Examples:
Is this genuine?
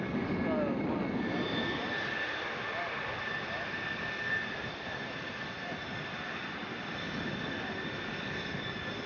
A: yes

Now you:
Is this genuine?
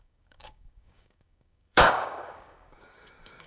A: no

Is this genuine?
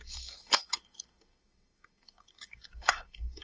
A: no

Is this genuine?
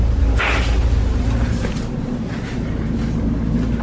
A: yes